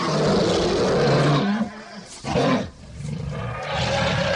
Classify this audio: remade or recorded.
recorded